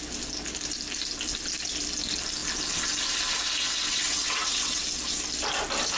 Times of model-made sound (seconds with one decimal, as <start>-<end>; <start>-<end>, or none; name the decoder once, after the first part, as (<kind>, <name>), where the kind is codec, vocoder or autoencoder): 3.8-4.8 (vocoder, WaveNeXt)